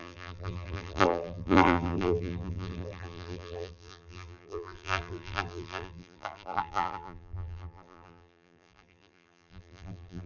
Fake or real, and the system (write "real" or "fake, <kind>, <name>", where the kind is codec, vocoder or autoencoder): fake, vocoder, BigVGAN v2